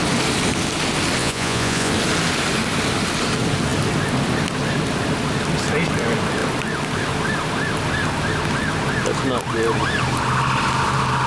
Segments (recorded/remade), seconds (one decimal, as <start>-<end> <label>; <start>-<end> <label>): 0.0-1.2 recorded; 1.2-1.9 remade; 1.9-11.3 recorded